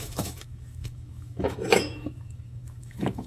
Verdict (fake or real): fake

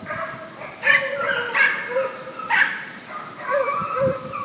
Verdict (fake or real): fake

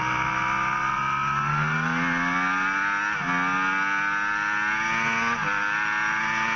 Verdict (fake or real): real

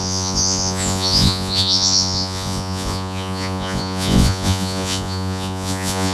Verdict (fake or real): fake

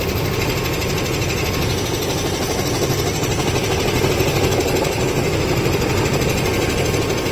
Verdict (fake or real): real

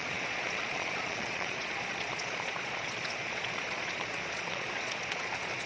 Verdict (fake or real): fake